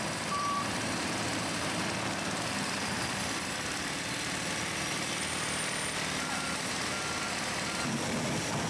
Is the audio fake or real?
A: fake